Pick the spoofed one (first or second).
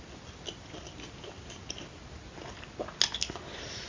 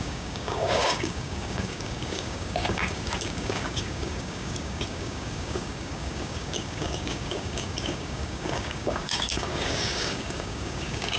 second